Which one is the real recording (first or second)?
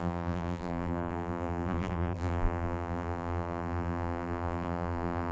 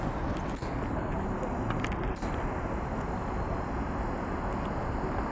second